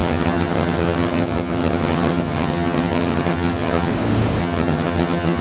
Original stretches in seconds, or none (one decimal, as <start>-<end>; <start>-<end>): 3.9-4.4